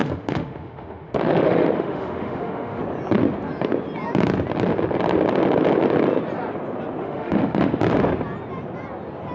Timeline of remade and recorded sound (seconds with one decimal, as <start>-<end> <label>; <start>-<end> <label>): 0.0-2.8 remade; 2.8-7.0 recorded; 7.0-7.8 remade; 7.8-9.3 recorded